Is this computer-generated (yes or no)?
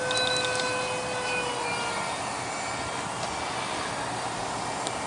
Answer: no